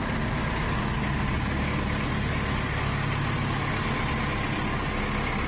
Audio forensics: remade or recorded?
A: recorded